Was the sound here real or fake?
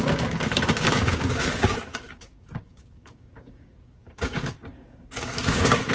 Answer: fake